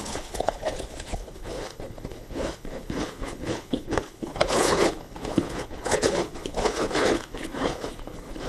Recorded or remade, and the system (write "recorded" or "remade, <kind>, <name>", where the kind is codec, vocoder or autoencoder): remade, codec, HILCodec